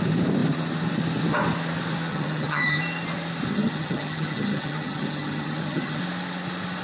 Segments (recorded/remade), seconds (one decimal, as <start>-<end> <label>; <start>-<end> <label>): 0.0-2.1 recorded; 2.1-2.8 remade; 2.8-3.5 recorded; 3.5-6.0 remade; 6.0-6.8 recorded